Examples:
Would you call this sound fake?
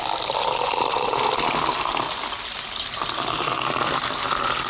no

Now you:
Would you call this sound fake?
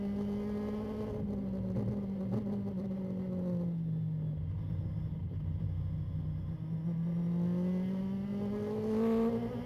no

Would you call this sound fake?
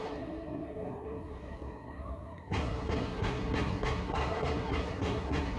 yes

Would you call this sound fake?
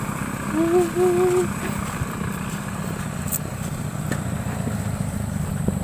no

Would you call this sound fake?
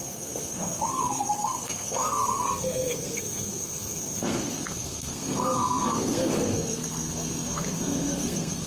yes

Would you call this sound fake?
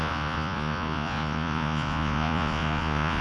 yes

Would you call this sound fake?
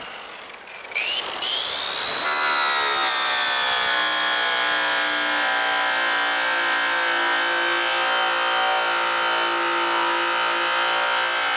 no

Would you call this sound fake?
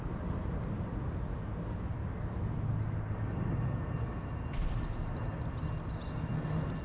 no